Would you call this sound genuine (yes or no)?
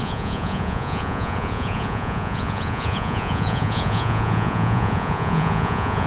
no